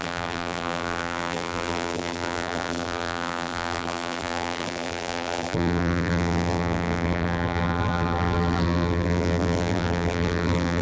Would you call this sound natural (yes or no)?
no